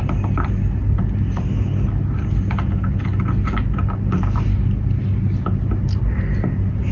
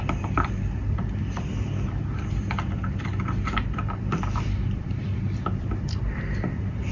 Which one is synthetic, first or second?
second